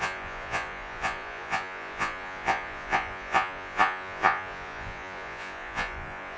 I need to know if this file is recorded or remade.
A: remade